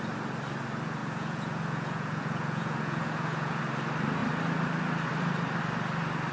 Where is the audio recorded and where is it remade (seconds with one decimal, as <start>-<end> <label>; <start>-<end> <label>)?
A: 0.0-1.0 recorded; 1.0-3.6 remade; 3.6-6.3 recorded